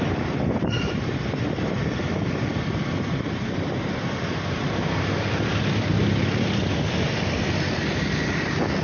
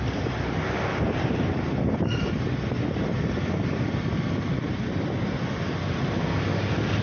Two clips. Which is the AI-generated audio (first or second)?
first